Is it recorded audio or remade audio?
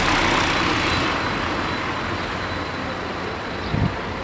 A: recorded